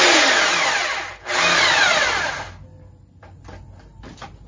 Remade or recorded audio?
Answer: recorded